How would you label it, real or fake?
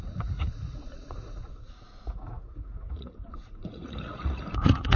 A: fake